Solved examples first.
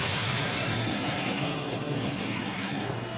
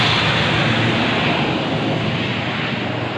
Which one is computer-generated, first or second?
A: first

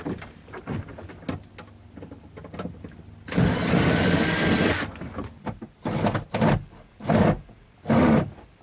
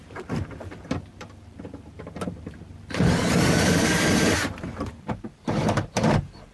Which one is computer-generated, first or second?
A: second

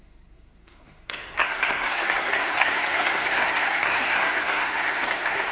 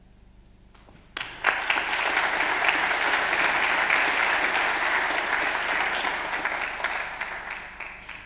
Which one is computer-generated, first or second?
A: first